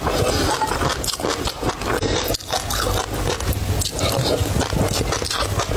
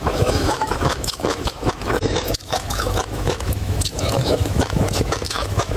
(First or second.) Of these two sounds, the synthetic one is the second